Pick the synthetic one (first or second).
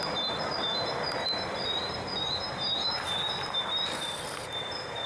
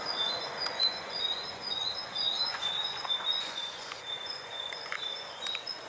second